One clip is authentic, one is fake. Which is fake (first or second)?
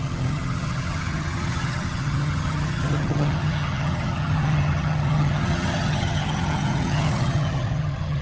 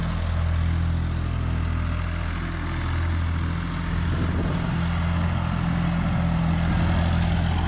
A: first